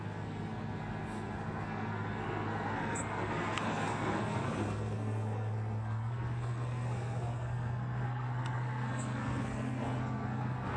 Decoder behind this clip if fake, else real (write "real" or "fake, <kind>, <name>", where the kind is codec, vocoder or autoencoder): fake, codec, SNAC